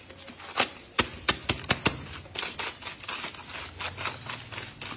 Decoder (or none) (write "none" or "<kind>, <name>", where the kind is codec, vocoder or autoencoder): none